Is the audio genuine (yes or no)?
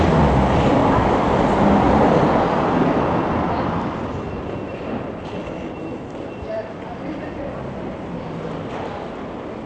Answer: yes